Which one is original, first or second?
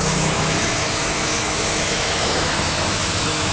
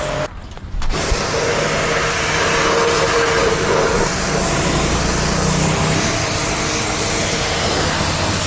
second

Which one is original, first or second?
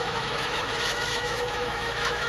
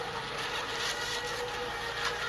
second